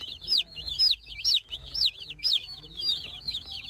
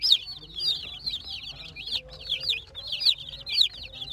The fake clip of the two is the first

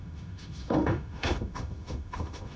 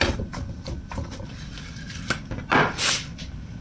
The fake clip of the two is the first